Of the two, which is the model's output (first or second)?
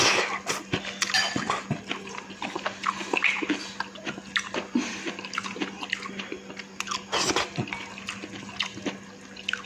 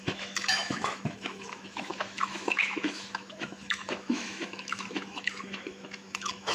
second